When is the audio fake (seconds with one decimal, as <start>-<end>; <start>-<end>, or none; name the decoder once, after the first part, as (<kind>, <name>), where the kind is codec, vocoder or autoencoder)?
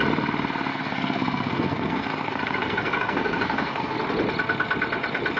0.7-3.9 (codec, SNAC)